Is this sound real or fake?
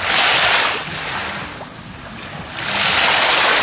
real